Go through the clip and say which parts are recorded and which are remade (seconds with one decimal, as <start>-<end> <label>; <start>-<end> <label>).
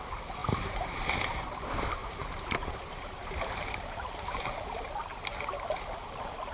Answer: 0.0-0.4 recorded; 0.4-1.3 remade; 1.3-2.0 recorded; 2.0-4.9 remade; 4.9-6.5 recorded